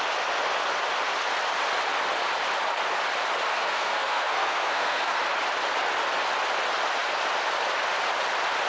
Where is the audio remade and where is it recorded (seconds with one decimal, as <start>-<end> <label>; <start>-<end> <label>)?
0.0-3.5 recorded; 3.5-5.2 remade; 5.2-8.7 recorded